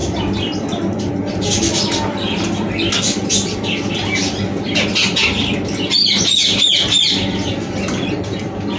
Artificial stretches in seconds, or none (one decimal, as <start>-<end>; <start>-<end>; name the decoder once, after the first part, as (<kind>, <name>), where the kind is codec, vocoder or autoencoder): none